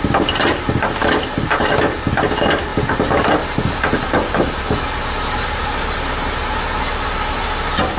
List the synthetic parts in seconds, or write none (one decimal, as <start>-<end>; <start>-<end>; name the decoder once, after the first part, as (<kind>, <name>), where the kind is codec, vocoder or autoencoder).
none